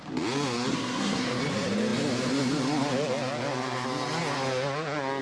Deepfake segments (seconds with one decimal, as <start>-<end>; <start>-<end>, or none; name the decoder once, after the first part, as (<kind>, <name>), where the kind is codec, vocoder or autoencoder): 0.7-1.4 (codec, SNAC)